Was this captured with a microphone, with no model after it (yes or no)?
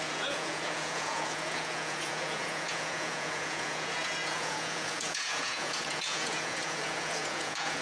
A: no